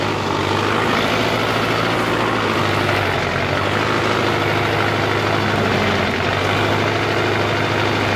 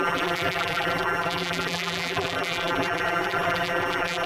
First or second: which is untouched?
first